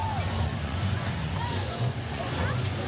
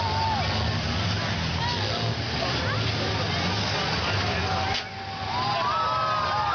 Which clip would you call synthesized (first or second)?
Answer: first